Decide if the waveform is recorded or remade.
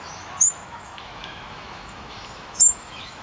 remade